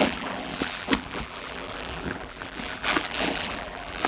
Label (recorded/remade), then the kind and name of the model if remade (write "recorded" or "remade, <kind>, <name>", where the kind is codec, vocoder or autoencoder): remade, vocoder, BigVGAN v2